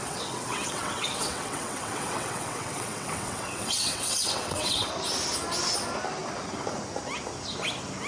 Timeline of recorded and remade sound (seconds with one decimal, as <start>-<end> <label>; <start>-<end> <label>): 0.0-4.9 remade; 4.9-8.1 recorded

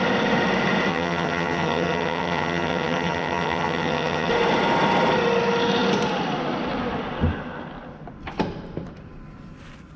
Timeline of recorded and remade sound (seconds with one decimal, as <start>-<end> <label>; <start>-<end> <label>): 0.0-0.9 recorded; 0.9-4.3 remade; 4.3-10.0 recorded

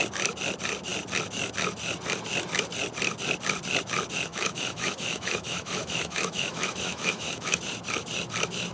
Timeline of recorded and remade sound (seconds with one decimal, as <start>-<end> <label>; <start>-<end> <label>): 0.0-4.3 recorded; 4.3-7.6 remade; 7.6-8.7 recorded

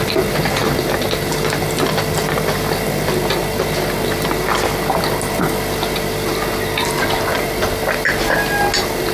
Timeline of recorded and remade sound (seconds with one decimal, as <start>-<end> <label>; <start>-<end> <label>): 0.0-9.1 recorded

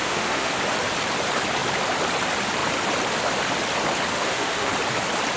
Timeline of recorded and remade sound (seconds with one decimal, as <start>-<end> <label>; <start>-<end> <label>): 0.0-0.5 remade; 0.5-4.1 recorded; 4.1-4.7 remade; 4.7-5.4 recorded

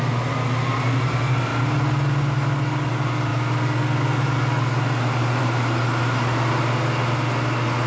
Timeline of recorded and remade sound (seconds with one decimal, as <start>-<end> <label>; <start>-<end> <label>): 0.0-7.9 recorded

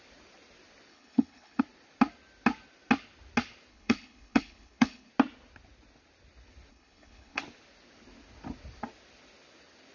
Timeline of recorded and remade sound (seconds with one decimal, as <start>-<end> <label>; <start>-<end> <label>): 0.0-0.9 recorded; 0.9-1.6 remade; 1.6-3.7 recorded; 3.7-5.1 remade; 5.1-6.7 recorded; 6.7-7.4 remade; 7.4-9.9 recorded